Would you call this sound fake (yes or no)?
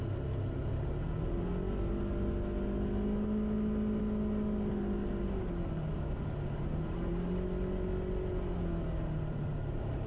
no